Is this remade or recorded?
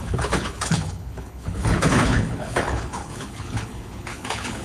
remade